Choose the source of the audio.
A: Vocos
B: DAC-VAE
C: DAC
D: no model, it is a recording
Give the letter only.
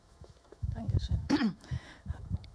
B